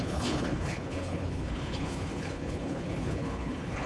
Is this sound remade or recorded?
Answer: remade